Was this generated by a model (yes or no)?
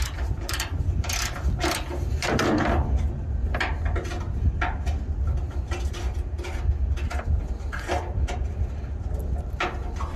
no